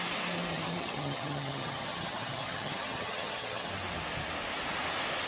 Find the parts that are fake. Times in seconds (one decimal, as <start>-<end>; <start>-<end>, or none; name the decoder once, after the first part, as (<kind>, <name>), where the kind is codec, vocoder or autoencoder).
0.5-3.7 (vocoder, HiFi-GAN)